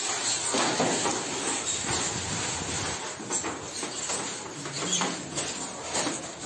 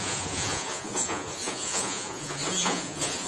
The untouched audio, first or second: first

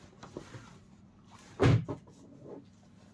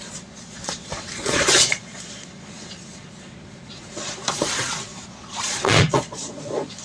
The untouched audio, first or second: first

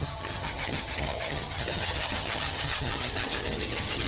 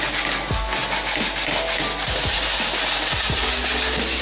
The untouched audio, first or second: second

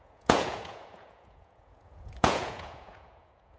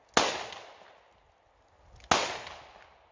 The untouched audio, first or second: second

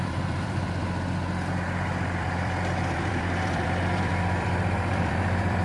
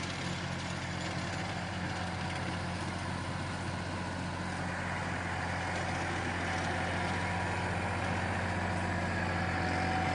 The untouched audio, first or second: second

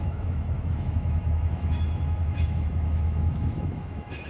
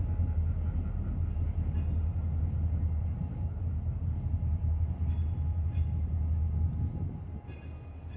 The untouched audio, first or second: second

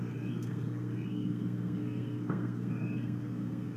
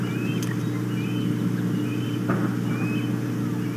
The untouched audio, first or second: second